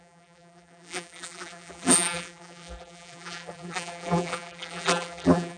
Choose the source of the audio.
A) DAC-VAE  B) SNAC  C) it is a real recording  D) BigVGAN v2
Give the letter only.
D